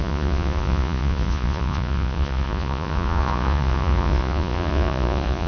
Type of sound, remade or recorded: remade